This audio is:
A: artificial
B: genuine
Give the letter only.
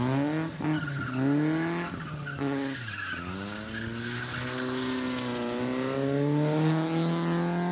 B